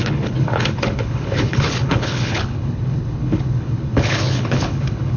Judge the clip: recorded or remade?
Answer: remade